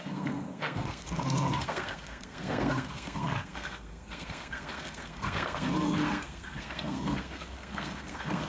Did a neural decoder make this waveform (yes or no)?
yes